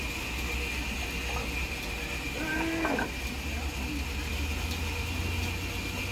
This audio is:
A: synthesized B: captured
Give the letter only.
B